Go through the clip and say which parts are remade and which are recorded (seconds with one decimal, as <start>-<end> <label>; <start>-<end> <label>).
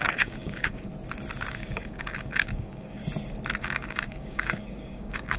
0.0-0.9 remade; 0.9-1.5 recorded; 1.5-3.0 remade; 3.0-3.6 recorded; 3.6-5.4 remade